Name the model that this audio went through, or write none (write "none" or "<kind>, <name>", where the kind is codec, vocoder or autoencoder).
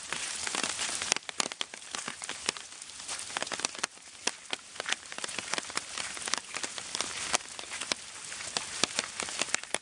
none